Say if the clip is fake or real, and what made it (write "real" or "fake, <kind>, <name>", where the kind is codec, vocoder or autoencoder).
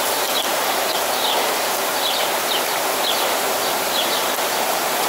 fake, vocoder, BigVGAN v2